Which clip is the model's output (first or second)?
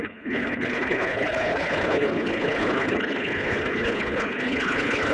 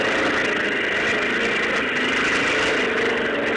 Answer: first